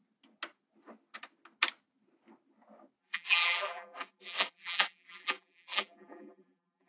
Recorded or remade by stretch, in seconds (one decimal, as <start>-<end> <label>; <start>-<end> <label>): 0.0-3.0 recorded; 3.0-6.9 remade